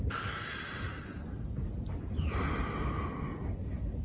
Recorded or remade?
recorded